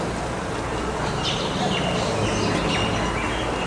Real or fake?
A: real